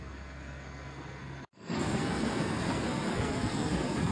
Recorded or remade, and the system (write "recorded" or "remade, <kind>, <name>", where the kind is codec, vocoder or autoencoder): remade, codec, SNAC